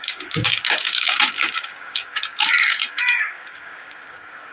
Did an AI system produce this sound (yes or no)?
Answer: yes